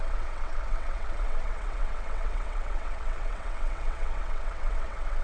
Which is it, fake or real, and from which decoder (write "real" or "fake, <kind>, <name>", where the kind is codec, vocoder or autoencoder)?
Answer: fake, vocoder, WaveNeXt